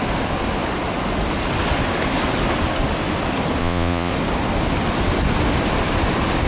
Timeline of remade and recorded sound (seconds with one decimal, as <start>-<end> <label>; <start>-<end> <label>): 0.0-3.6 recorded; 3.6-4.1 remade; 4.1-6.5 recorded